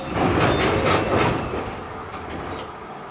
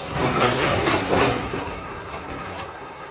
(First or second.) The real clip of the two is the first